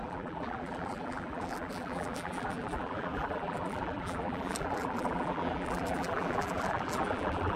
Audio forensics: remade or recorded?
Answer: remade